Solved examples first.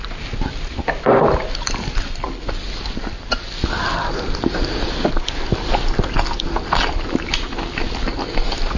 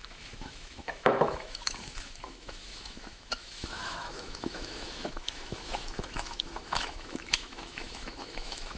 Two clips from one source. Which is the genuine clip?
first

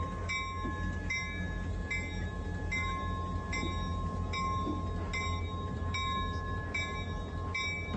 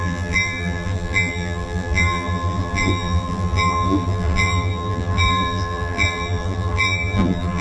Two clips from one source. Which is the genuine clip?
first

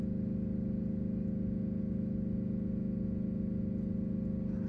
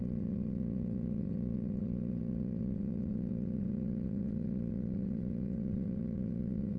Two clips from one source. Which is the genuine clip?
first